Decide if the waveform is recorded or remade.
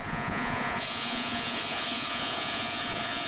remade